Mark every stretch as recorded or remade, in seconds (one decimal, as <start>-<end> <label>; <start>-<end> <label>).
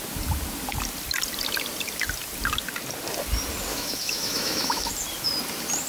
0.0-3.7 recorded; 3.7-4.9 remade; 4.9-5.9 recorded